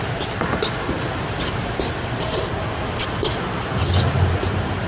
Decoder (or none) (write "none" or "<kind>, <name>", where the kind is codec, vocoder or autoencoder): none